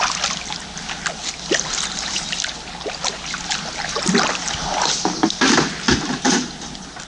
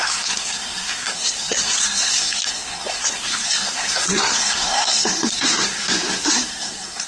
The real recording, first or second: first